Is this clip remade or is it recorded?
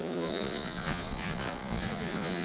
remade